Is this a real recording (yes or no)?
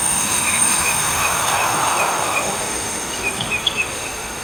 no